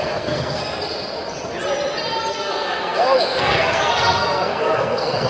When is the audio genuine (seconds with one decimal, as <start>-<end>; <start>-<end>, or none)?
0.6-2.3